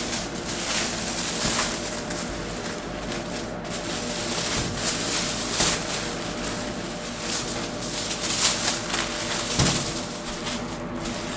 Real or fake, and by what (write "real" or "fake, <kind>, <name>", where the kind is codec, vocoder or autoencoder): real